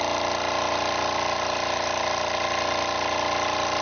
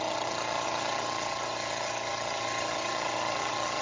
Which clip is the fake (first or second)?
second